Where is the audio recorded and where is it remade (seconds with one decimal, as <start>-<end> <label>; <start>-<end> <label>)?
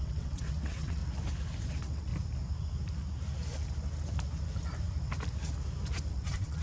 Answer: 0.0-1.0 remade; 1.0-1.7 recorded; 1.7-2.1 remade; 2.1-6.1 recorded; 6.1-6.6 remade